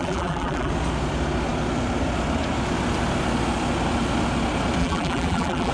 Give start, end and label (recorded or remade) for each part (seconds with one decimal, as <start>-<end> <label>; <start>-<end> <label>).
0.0-0.7 remade; 0.7-4.8 recorded; 4.8-5.7 remade